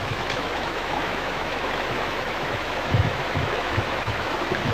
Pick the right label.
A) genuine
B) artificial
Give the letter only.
B